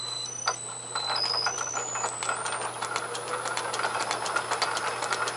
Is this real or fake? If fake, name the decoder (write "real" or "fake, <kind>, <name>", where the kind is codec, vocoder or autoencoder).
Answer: real